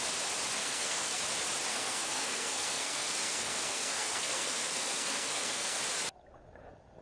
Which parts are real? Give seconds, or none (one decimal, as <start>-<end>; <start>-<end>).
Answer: 0.0-0.6; 1.2-1.7; 5.8-7.0